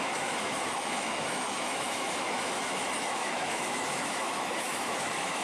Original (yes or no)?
no